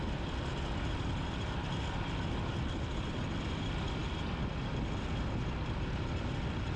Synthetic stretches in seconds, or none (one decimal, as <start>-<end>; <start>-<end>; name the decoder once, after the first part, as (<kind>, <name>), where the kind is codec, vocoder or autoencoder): none